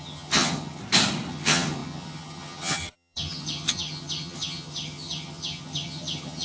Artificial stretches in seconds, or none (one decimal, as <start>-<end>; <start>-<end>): 0.0-0.8; 1.3-6.4